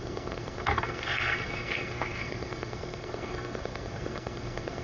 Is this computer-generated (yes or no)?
yes